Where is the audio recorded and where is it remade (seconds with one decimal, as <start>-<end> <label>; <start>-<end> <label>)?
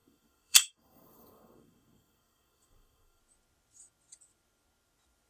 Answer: 0.0-3.2 remade; 3.2-5.3 recorded